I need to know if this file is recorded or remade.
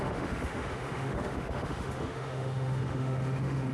remade